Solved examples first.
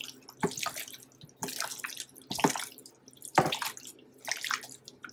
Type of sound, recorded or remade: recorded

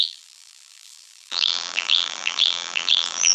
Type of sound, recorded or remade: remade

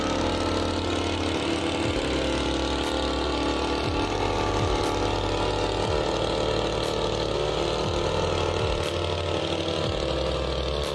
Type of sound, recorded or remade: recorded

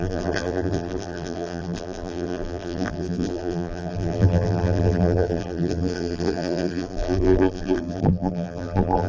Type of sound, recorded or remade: remade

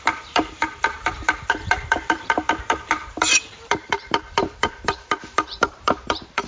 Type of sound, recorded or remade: remade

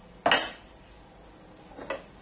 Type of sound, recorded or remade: recorded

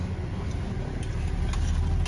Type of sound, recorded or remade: recorded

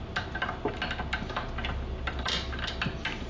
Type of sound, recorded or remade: recorded